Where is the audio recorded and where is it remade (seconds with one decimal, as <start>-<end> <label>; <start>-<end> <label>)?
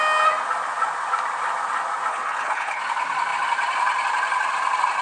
0.0-2.1 recorded; 2.1-2.8 remade; 2.8-5.0 recorded